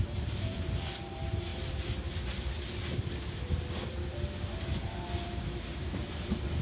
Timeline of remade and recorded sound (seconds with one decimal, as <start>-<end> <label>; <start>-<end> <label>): 0.0-1.5 remade; 1.5-4.8 recorded; 4.8-6.6 remade